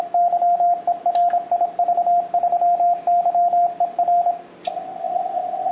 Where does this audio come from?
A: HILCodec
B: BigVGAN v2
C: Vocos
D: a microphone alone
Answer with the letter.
D